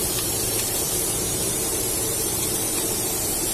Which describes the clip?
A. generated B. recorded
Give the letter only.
A